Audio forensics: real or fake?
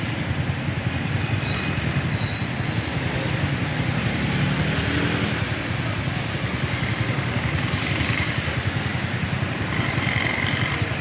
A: real